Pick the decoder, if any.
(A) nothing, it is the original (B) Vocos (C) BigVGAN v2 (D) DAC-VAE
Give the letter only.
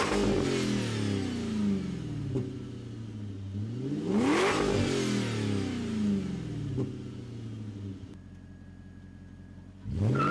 A